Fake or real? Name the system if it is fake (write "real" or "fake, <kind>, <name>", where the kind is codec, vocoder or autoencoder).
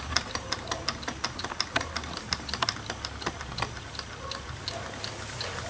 real